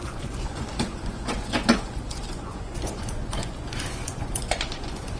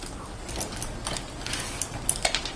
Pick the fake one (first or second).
first